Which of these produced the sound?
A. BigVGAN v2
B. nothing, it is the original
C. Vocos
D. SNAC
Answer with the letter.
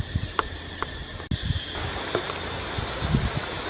B